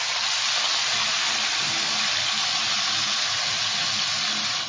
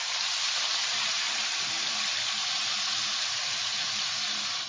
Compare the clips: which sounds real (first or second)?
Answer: first